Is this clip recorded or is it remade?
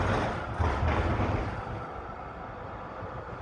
recorded